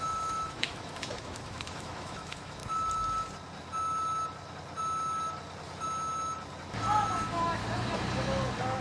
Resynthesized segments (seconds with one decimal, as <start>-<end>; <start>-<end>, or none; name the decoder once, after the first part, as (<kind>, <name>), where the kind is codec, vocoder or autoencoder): 0.0-2.6 (autoencoder, DAC-VAE); 6.7-7.6